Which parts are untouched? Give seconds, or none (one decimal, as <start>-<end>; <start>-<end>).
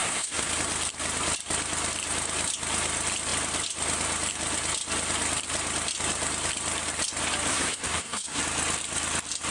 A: 0.5-7.5; 8.4-9.5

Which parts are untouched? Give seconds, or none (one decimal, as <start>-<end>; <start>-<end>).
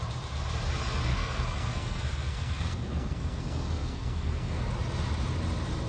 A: 0.0-1.1; 4.6-5.9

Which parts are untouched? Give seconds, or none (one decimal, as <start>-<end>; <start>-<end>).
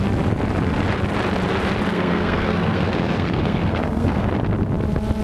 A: 0.0-1.9; 4.3-5.2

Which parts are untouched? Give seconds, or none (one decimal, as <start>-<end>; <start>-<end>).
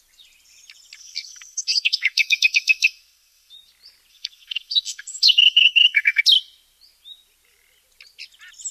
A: 0.0-1.0; 3.5-4.1; 6.2-8.7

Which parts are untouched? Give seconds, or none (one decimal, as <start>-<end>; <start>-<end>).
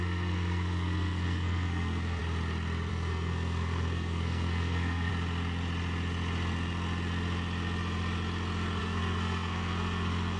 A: 2.2-2.9; 5.1-8.8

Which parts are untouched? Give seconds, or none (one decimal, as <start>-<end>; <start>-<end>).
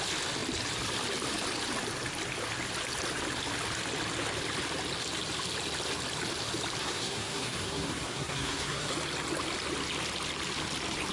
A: 0.0-6.8; 8.9-11.1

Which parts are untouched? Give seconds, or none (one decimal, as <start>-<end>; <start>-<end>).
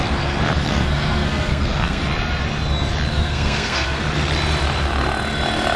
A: 0.0-0.7; 2.0-3.1; 4.0-5.8